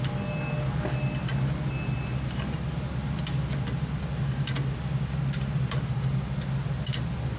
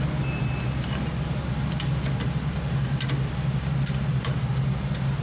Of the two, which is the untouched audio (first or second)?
first